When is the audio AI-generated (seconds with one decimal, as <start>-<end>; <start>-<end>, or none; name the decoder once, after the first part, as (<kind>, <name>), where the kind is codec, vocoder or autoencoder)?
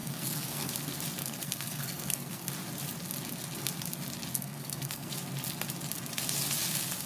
0.0-0.7 (codec, SNAC); 1.2-2.5; 4.3-5.1